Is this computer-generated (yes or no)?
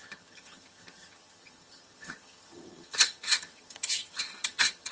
yes